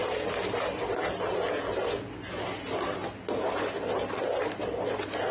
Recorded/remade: recorded